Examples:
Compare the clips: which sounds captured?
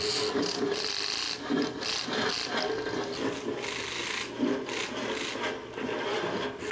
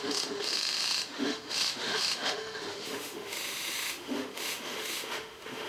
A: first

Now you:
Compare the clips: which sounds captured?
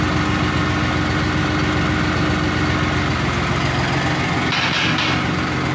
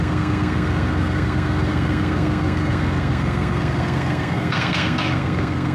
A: first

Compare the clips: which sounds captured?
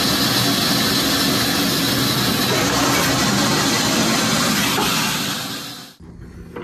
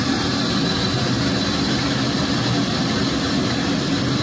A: first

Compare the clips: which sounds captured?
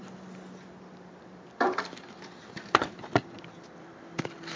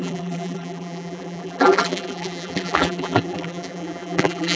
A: first